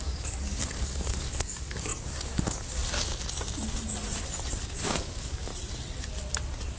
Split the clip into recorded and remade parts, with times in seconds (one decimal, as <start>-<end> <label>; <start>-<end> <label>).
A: 0.0-2.8 remade; 2.8-4.6 recorded; 4.6-5.5 remade; 5.5-6.8 recorded